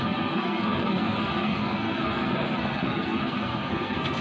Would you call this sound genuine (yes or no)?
no